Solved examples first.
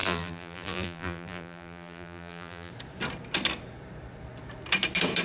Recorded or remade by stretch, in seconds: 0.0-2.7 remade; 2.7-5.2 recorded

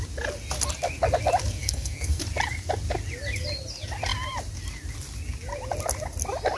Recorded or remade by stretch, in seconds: 0.0-1.6 recorded; 1.6-2.2 remade; 2.2-6.6 recorded

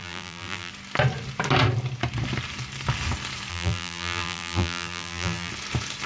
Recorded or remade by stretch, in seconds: 0.0-0.7 remade; 0.7-3.5 recorded; 3.5-5.5 remade; 5.5-6.1 recorded

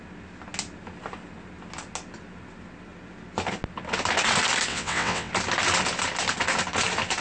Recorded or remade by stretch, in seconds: 0.0-4.7 recorded; 4.7-5.3 remade; 5.3-7.2 recorded

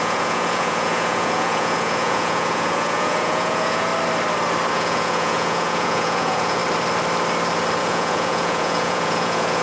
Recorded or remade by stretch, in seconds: 0.0-3.9 remade; 3.9-4.7 recorded; 4.7-6.6 remade; 6.6-7.8 recorded; 7.8-9.6 remade